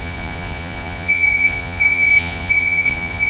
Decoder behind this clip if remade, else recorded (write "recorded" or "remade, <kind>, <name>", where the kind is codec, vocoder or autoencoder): remade, vocoder, Vocos